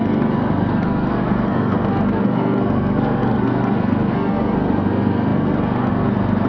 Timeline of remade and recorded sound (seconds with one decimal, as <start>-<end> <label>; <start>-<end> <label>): 0.0-6.5 remade